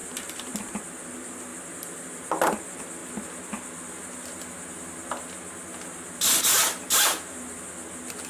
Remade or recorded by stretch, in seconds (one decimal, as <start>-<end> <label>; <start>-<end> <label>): 0.0-0.8 remade; 0.8-8.3 recorded

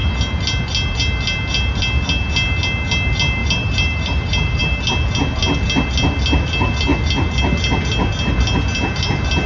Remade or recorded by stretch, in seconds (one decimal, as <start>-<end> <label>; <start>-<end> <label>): 0.0-3.4 recorded; 3.4-4.6 remade; 4.6-9.5 recorded